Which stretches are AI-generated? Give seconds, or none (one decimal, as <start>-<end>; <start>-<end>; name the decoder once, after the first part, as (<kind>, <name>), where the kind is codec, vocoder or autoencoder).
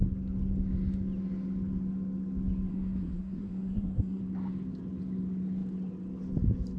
2.7-4.2 (codec, SNAC)